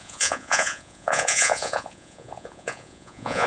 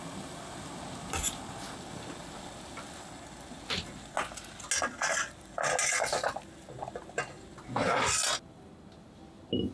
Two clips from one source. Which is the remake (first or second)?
first